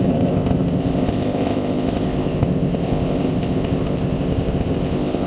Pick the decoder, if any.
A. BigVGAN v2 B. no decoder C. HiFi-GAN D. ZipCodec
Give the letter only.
D